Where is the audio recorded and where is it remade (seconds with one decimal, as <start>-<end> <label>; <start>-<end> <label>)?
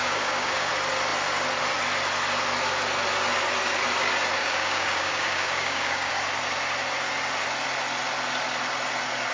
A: 0.0-0.7 remade; 0.7-4.4 recorded; 4.4-6.1 remade; 6.1-9.3 recorded